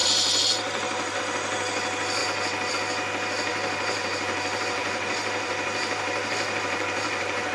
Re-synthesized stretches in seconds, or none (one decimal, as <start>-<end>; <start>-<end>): 0.0-1.2; 3.5-7.5